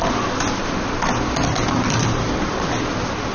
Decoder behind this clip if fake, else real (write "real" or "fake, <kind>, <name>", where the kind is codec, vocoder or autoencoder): real